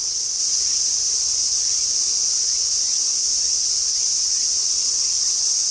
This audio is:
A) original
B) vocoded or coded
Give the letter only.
B